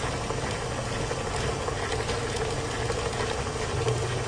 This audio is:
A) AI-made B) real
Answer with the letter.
B